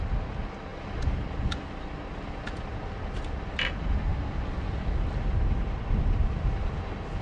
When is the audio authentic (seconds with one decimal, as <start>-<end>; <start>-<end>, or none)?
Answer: 0.0-7.2